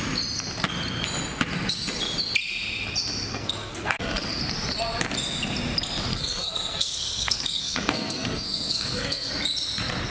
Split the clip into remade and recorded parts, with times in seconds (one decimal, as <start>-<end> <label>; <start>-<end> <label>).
0.0-3.3 recorded; 3.3-4.4 remade; 4.4-6.1 recorded; 6.1-9.3 remade; 9.3-10.1 recorded